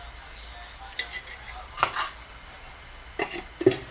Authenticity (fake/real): real